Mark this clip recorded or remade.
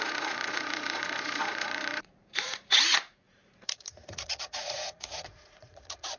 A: remade